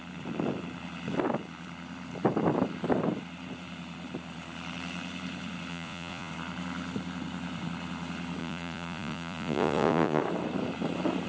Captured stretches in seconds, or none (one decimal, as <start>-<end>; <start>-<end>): 0.0-5.7; 6.3-8.4; 10.2-11.3